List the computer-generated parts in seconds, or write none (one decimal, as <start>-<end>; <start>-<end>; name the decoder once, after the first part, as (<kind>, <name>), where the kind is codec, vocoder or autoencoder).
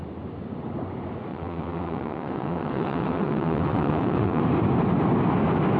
1.3-4.4 (vocoder, WaveNeXt)